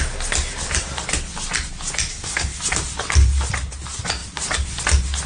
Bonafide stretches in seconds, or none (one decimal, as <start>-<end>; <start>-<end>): 0.0-2.1; 2.6-5.3